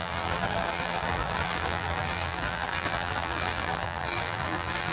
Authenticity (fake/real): fake